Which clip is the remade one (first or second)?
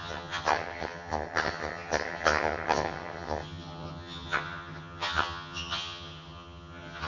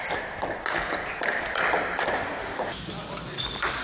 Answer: first